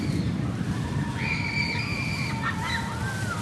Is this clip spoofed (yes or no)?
no